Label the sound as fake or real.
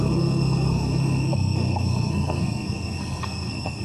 fake